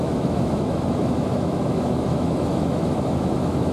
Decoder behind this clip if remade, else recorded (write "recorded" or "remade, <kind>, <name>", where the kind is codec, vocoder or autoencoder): remade, autoencoder, DAC-VAE